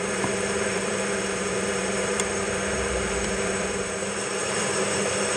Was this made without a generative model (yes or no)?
no